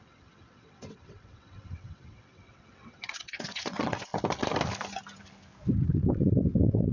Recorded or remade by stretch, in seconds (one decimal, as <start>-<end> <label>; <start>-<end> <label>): 0.0-4.1 remade; 4.1-5.9 recorded; 5.9-6.9 remade